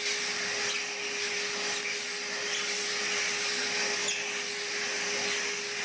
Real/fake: real